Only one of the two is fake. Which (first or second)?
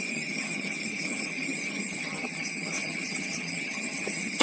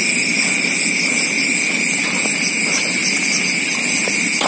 first